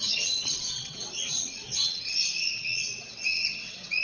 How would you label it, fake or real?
fake